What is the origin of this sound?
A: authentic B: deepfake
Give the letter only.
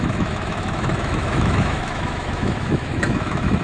B